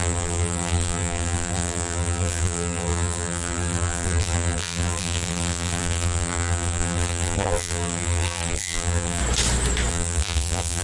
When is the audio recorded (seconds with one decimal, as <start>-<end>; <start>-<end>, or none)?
9.2-9.9